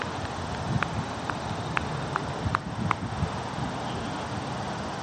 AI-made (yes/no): no